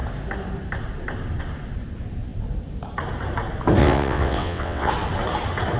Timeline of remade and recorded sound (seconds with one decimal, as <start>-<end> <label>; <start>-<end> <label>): 0.0-3.8 recorded; 3.8-4.9 remade; 4.9-5.8 recorded